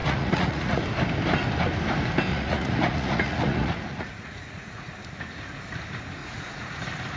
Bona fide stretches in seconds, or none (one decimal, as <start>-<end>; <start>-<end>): 0.8-2.3; 4.9-6.2; 6.7-7.2